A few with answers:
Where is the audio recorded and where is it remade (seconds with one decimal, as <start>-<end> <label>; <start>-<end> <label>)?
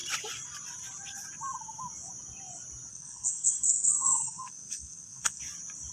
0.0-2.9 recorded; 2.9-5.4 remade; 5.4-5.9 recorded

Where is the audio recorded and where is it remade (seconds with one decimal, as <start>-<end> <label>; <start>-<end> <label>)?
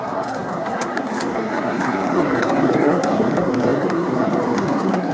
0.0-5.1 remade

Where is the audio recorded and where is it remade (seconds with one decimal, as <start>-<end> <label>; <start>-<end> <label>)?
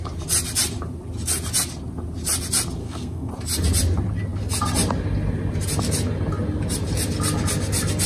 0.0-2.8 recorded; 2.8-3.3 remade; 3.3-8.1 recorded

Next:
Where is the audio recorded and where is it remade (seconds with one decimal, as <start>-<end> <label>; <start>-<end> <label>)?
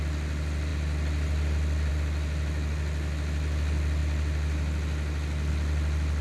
0.0-6.2 recorded